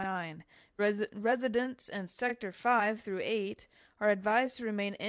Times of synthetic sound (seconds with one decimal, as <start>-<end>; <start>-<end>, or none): 0.8-2.3; 2.8-5.1